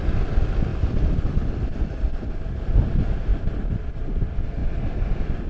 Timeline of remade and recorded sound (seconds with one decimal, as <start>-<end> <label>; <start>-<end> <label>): 0.0-5.5 recorded